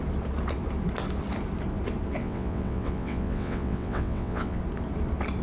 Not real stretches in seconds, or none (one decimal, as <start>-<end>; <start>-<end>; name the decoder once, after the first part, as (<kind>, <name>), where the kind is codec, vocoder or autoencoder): 2.2-4.6 (vocoder, WaveNeXt)